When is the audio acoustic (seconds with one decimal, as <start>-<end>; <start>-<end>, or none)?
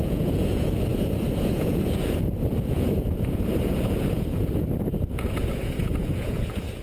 none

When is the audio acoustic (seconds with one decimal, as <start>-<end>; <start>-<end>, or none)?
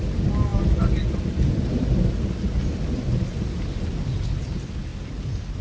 0.0-5.6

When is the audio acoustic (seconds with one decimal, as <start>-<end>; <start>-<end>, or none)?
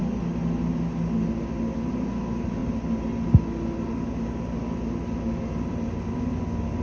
0.0-6.8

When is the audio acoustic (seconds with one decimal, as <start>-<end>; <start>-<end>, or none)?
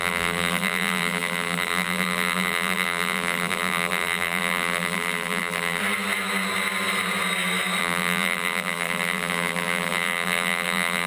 5.8-7.8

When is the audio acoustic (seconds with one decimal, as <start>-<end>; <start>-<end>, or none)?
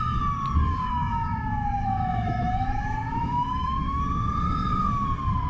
0.0-0.7; 4.0-5.5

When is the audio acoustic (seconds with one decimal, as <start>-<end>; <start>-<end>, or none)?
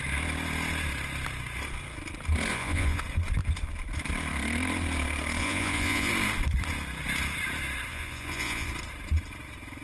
0.0-2.5; 3.0-5.4; 6.1-7.9; 8.7-9.8